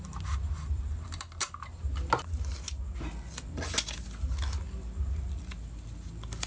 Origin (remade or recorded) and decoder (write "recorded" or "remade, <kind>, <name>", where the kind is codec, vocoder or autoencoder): recorded